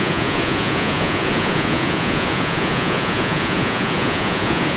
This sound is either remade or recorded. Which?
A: remade